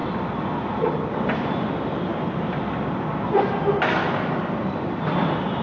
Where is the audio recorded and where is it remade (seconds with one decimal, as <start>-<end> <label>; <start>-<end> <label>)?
0.0-5.6 recorded